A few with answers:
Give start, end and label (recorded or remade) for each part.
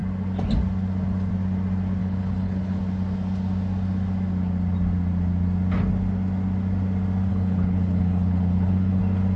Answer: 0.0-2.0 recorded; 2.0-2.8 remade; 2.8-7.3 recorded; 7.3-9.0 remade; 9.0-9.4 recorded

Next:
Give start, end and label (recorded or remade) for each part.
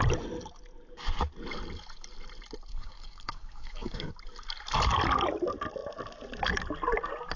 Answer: 0.0-2.7 recorded; 2.7-4.1 remade; 4.1-7.4 recorded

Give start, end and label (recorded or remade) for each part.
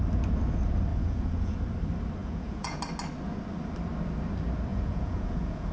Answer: 0.0-0.9 recorded; 0.9-1.6 remade; 1.6-2.2 recorded; 2.2-2.8 remade; 2.8-4.7 recorded; 4.7-5.7 remade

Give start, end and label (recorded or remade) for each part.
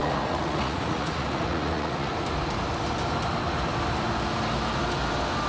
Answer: 0.0-2.1 remade; 2.1-5.5 recorded